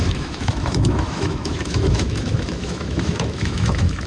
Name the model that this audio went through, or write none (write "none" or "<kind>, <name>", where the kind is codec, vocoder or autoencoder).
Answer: autoencoder, DAC-VAE